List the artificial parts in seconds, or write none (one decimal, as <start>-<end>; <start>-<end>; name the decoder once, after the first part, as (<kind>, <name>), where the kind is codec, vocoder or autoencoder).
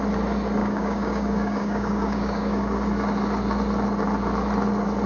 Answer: 0.6-2.6 (codec, DAC)